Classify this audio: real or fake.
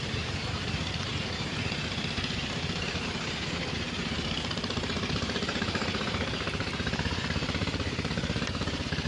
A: fake